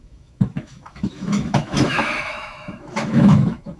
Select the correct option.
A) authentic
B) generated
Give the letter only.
B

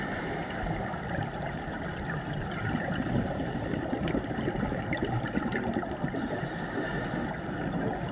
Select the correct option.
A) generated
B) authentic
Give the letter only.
B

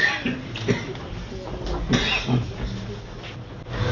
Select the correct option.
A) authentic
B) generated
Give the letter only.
A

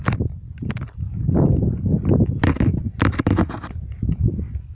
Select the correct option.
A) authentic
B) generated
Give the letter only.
A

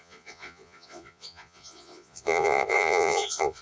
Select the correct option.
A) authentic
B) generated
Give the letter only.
B